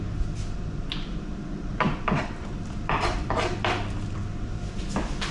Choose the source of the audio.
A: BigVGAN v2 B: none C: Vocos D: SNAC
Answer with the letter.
A